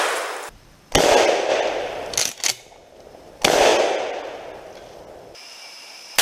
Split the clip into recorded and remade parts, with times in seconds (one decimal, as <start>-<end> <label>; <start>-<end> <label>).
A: 0.0-1.5 recorded; 1.5-2.2 remade; 2.2-6.2 recorded